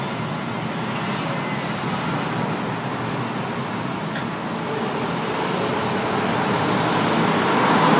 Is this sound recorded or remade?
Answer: recorded